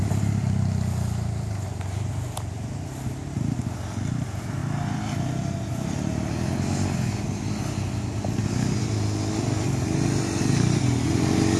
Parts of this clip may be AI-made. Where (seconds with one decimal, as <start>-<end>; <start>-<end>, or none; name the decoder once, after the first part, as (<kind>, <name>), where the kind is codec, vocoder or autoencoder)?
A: none